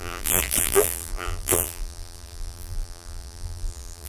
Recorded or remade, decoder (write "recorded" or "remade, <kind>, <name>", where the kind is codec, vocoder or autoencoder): remade, vocoder, BigVGAN v2